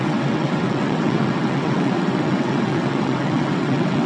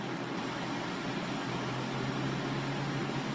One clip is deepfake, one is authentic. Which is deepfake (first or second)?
first